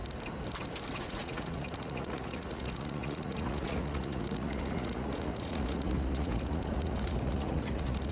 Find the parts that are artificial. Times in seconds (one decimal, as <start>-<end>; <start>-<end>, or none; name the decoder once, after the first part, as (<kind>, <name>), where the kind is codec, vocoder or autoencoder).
1.0-8.1 (vocoder, Vocos)